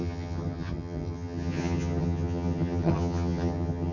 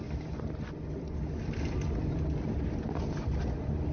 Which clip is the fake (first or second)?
first